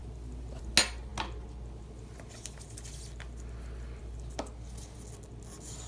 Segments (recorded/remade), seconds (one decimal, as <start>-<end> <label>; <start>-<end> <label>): 0.0-5.9 recorded